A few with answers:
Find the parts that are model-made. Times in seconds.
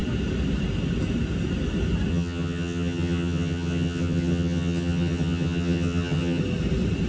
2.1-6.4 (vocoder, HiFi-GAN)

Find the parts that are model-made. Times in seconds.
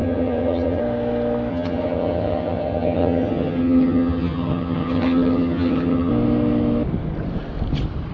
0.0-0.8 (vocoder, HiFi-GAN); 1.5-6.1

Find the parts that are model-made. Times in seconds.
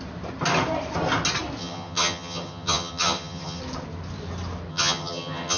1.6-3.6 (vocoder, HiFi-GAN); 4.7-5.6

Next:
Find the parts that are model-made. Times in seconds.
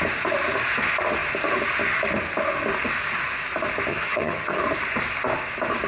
3.9-4.6 (vocoder, HiFi-GAN)